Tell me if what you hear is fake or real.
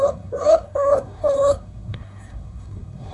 fake